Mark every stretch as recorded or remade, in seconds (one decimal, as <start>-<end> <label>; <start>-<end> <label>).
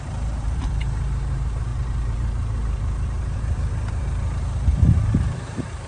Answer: 0.0-5.9 remade